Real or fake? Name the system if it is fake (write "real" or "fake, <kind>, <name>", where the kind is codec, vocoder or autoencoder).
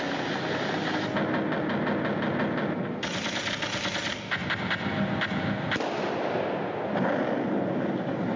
real